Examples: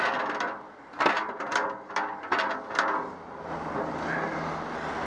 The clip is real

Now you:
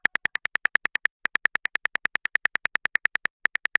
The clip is real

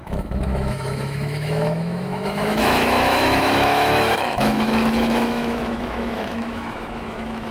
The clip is fake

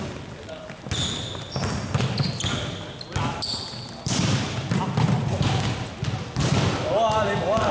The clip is real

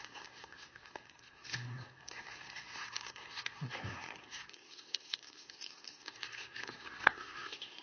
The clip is fake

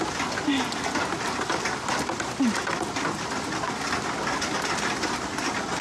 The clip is real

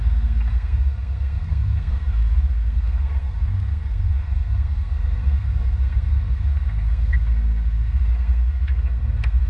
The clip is fake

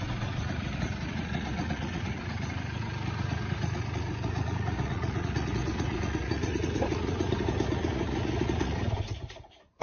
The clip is fake